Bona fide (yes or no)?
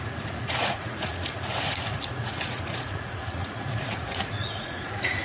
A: no